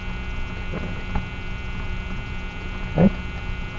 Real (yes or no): yes